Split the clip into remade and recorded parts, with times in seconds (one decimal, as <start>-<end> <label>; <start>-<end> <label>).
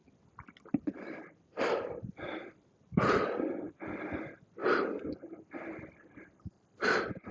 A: 0.0-7.3 recorded